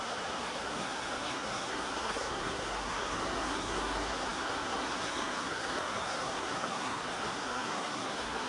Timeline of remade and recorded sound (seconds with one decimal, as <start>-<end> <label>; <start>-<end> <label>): 0.0-8.5 remade